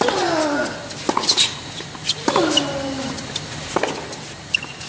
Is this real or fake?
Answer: real